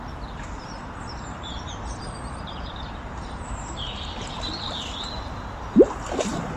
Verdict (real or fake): fake